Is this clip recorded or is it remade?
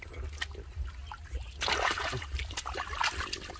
recorded